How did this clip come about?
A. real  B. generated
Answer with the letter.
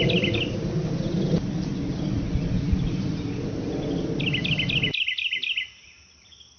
A